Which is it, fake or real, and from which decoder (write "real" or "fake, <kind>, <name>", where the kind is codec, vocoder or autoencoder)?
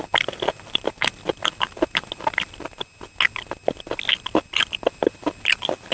real